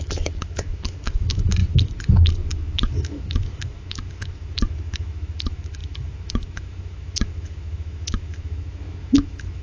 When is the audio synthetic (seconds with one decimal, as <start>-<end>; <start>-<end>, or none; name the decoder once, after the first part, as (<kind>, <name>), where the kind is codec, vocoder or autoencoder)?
0.0-9.6 (autoencoder, DAC-VAE)